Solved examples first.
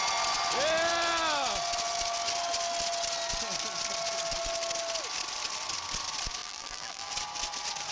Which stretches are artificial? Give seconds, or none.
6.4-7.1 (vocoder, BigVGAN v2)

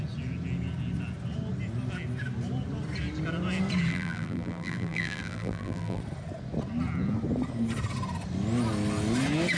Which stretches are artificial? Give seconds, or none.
3.9-6.0 (vocoder, BigVGAN v2)

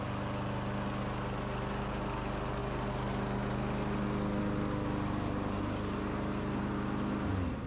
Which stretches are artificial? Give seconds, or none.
none

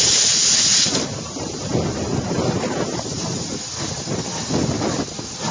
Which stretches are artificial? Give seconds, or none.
0.7-4.0 (vocoder, BigVGAN v2)

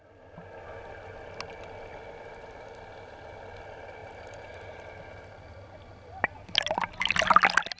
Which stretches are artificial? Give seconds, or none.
4.0-4.8 (vocoder, BigVGAN v2)

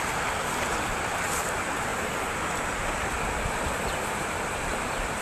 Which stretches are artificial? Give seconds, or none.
none

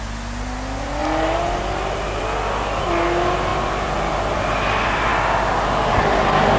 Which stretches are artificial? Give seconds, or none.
3.5-4.4 (vocoder, BigVGAN v2)

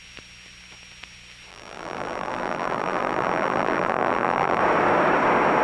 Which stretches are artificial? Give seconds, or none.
1.5-4.6 (vocoder, BigVGAN v2)